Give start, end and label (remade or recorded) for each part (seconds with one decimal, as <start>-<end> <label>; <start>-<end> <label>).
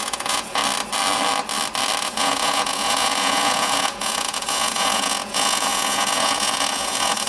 0.0-0.6 remade; 0.6-2.0 recorded; 2.0-7.3 remade